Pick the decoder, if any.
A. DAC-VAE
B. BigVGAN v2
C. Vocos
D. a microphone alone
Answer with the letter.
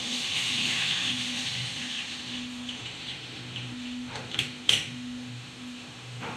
A